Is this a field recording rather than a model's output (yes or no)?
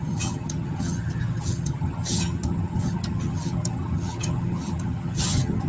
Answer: no